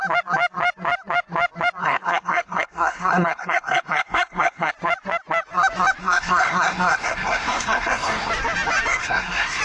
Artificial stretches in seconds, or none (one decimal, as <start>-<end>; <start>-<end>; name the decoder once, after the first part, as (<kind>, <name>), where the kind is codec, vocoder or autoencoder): 1.8-4.7 (codec, SNAC); 6.0-8.3; 8.9-9.6